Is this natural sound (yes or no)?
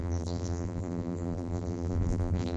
no